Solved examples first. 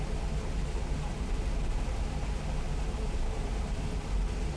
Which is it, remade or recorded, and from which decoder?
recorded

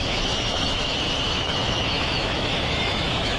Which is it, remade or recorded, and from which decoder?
remade, autoencoder, DAC-VAE